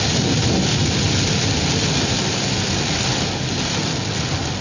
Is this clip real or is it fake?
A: real